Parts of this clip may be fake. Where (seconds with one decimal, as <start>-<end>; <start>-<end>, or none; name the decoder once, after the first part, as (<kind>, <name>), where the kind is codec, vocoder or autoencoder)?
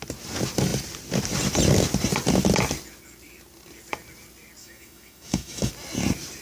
4.6-5.7 (autoencoder, DAC-VAE)